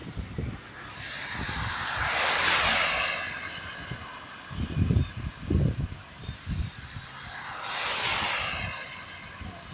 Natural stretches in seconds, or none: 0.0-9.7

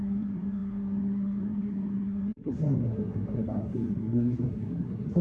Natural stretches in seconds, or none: none